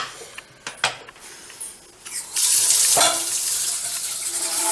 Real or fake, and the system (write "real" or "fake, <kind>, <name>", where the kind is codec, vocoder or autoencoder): real